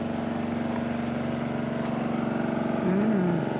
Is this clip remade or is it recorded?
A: recorded